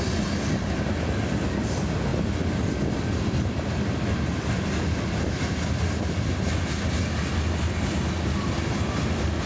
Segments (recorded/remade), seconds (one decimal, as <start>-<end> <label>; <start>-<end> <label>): 0.0-9.5 recorded